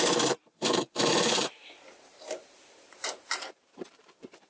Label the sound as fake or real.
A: fake